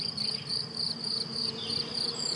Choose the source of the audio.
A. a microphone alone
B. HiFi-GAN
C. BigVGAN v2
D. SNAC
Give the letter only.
C